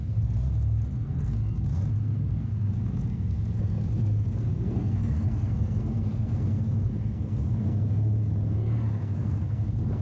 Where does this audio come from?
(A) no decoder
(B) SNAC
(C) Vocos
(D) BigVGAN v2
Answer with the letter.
B